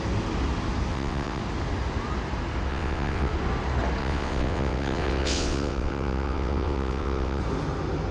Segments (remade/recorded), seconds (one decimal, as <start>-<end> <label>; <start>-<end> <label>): 0.0-0.9 recorded; 0.9-1.4 remade; 1.4-2.7 recorded; 2.7-3.3 remade; 3.3-4.0 recorded; 4.0-7.4 remade; 7.4-8.1 recorded